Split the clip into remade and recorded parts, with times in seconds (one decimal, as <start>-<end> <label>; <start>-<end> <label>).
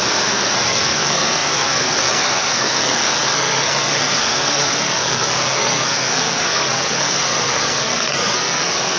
0.0-9.0 remade